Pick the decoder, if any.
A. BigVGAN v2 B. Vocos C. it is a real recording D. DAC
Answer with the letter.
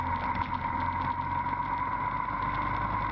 C